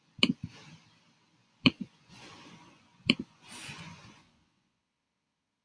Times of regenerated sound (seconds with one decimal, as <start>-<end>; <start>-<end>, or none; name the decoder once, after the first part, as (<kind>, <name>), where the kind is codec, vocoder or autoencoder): 1.4-4.8 (vocoder, Vocos)